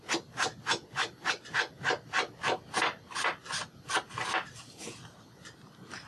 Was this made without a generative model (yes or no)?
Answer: yes